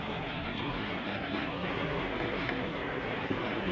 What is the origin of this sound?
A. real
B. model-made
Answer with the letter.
B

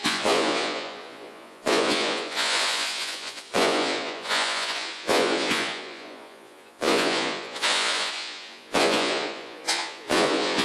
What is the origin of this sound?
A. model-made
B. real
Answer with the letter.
A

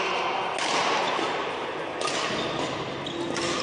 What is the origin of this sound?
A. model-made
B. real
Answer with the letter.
B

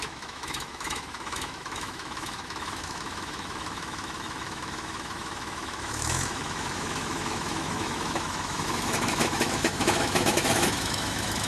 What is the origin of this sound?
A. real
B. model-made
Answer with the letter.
B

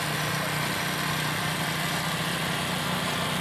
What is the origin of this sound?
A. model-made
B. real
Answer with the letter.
B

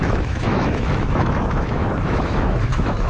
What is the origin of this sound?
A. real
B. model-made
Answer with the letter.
B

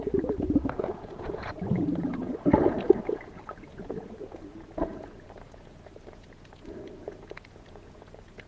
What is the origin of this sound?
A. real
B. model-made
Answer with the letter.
B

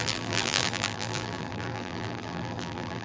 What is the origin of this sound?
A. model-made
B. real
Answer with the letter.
A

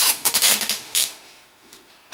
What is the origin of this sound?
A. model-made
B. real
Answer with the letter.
A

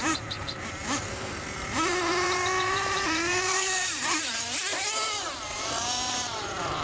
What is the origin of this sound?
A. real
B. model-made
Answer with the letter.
B